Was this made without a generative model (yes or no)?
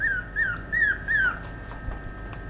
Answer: yes